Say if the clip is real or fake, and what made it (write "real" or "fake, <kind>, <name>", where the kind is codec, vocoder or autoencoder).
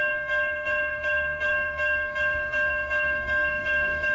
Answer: fake, codec, SNAC